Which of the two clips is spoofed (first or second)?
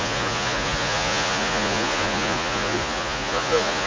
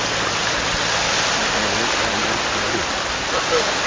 first